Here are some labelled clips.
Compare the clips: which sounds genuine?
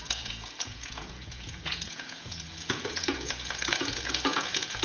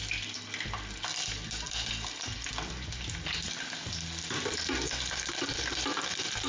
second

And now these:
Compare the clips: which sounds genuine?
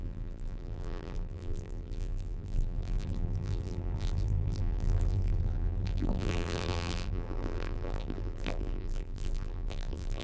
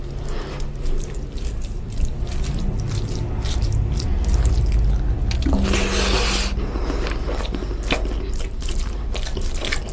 second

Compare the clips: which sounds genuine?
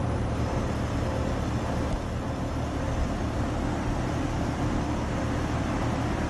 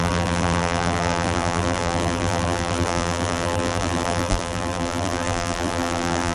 first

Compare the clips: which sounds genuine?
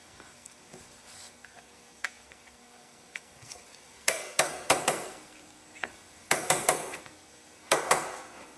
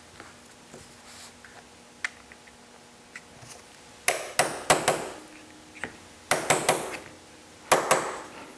second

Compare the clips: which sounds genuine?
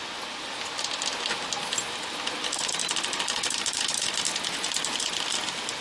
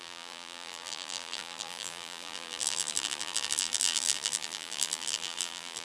first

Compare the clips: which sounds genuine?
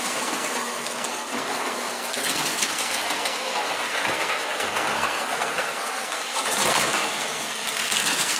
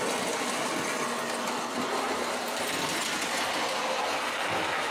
second